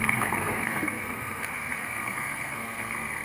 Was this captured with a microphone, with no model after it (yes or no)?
no